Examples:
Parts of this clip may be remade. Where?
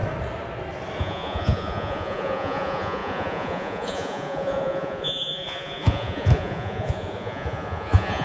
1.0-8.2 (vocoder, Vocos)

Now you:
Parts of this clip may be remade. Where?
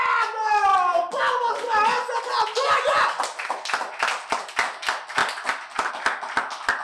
none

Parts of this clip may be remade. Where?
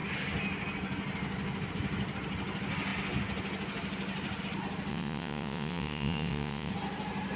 4.9-6.7 (vocoder, WaveNeXt)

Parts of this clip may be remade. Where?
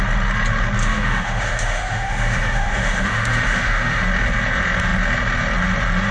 0.8-4.1 (autoencoder, DAC-VAE)